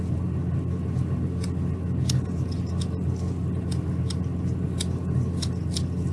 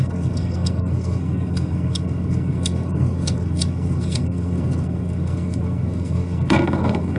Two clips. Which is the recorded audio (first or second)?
first